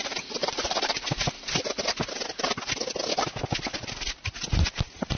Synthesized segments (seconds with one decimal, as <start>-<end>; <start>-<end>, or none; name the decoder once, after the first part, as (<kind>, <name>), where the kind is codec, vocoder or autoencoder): 0.4-1.0 (vocoder, Vocos)